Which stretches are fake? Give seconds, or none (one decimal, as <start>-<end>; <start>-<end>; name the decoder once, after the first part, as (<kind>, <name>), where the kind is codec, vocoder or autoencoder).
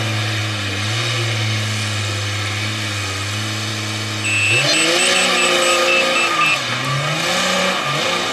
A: none